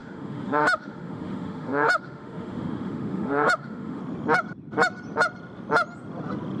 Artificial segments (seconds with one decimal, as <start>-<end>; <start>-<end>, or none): 0.0-4.0